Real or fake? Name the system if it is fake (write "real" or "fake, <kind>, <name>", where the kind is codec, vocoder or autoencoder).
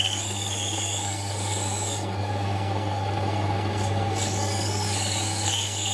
fake, codec, SNAC